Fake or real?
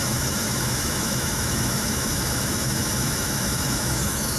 fake